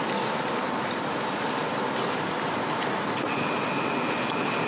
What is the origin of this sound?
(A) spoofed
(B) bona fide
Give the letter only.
B